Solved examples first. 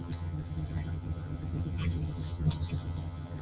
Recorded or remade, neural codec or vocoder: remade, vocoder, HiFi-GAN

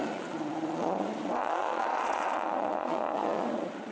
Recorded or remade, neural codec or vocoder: remade, vocoder, Vocos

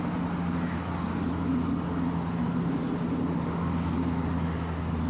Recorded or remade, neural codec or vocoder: recorded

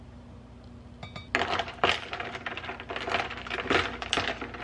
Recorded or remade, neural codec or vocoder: recorded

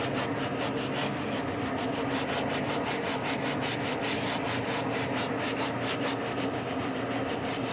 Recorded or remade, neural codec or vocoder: recorded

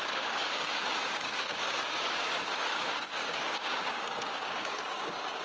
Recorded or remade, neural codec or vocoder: remade, codec, DAC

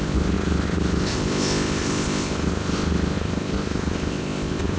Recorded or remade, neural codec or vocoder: remade, codec, ZipCodec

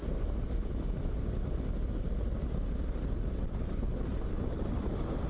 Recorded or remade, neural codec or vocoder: recorded